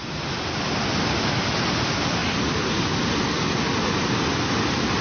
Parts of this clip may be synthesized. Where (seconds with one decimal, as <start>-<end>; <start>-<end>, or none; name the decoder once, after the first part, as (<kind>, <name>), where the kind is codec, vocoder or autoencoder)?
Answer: none